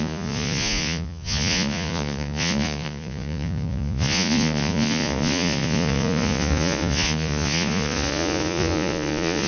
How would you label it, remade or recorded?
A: remade